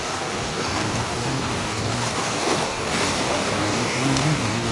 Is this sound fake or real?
fake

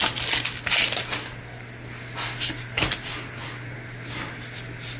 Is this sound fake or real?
real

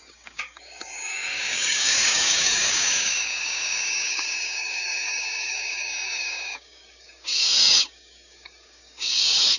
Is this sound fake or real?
fake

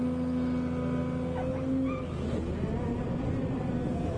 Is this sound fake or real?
real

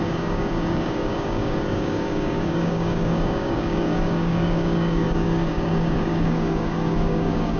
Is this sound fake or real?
fake